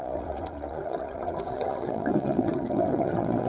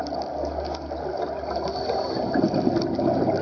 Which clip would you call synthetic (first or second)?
first